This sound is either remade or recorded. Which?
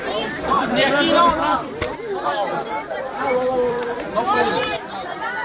remade